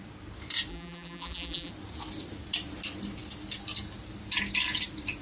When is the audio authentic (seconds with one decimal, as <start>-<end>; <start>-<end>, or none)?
0.0-0.7; 1.7-5.2